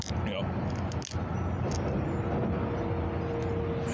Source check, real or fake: real